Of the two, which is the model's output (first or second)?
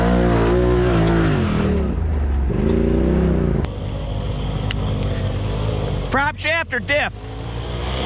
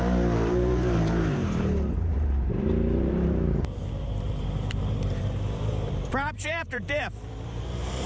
second